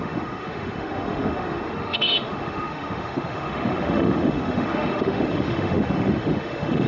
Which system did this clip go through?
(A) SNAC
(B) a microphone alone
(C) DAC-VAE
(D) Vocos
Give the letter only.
C